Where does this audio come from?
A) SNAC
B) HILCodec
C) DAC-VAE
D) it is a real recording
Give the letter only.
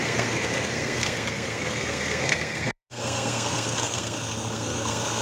A